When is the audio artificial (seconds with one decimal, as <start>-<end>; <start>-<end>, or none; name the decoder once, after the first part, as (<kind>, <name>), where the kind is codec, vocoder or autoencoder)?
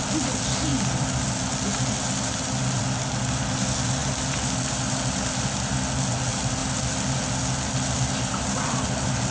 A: none